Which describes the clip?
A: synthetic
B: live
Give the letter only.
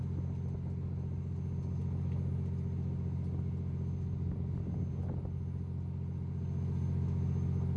B